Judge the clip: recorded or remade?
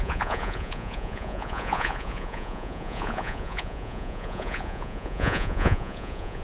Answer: remade